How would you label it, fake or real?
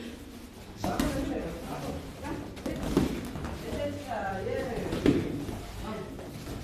real